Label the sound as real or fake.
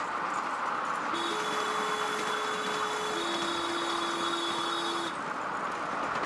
real